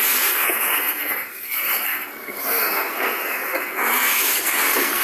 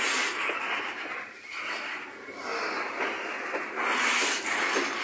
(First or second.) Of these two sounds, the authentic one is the second